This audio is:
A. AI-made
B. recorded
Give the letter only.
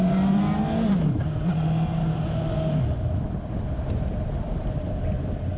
B